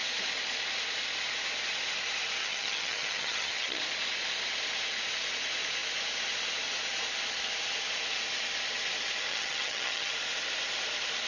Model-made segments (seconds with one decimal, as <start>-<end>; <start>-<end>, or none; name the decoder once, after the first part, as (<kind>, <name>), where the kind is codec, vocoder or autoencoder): 2.4-3.8 (vocoder, HiFi-GAN); 9.3-10.1